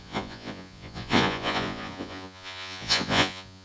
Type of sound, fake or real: fake